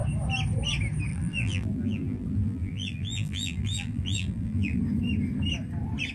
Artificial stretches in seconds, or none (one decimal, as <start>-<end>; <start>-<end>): 1.1-4.8